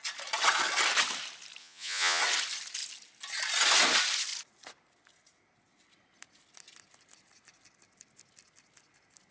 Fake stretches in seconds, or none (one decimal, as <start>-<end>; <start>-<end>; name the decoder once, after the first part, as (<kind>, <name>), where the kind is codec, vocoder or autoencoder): 1.6-2.2 (vocoder, Vocos)